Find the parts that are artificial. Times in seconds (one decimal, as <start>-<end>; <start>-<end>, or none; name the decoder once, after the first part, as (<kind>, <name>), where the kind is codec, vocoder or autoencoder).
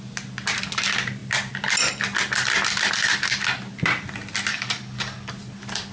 4.5-5.3 (codec, DAC)